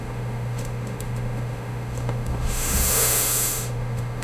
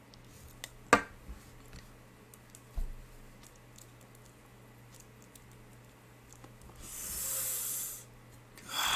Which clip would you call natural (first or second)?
second